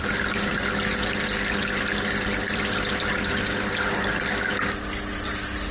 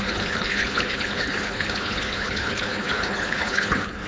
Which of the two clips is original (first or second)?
first